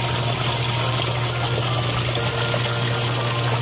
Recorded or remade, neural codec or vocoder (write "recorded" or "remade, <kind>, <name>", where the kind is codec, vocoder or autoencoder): recorded